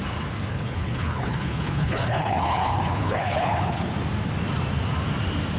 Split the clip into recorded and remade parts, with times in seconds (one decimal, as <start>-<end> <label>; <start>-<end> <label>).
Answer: 0.0-0.5 recorded; 0.5-3.9 remade; 3.9-5.6 recorded